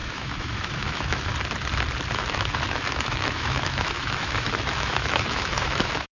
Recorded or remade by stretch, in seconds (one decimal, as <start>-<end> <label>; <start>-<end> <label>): 0.0-1.3 remade; 1.3-2.1 recorded; 2.1-6.2 remade

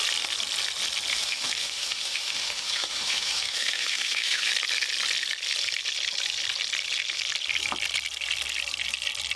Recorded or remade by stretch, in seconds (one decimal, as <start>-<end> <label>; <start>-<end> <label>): 0.0-1.1 recorded; 1.1-4.5 remade; 4.5-9.4 recorded

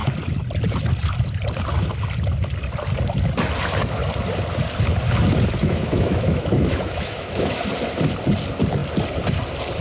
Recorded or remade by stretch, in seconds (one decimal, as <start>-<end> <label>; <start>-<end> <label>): 0.0-5.6 recorded; 5.6-7.6 remade; 7.6-9.8 recorded

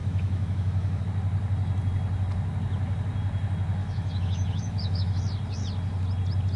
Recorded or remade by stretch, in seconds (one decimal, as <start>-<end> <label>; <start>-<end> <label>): 0.0-1.0 remade; 1.0-3.8 recorded; 3.8-5.2 remade; 5.2-6.6 recorded

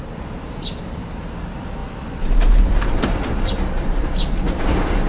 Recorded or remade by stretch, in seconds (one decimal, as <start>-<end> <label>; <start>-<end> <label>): 0.0-5.1 recorded

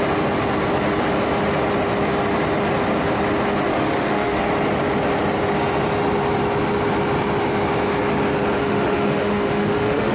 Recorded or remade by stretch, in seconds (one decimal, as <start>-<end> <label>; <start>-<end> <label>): 0.0-3.7 recorded; 3.7-4.5 remade; 4.5-8.6 recorded; 8.6-10.1 remade

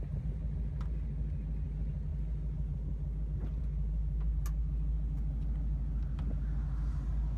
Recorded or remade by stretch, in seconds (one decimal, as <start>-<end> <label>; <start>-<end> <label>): 0.0-7.4 recorded

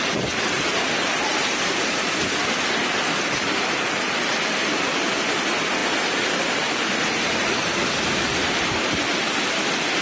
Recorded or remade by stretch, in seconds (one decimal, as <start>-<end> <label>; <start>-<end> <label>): 0.0-10.0 recorded